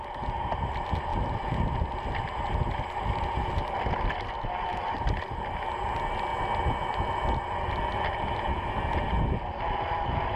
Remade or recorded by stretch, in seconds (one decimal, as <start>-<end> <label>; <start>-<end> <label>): 0.0-4.7 recorded; 4.7-5.2 remade; 5.2-10.4 recorded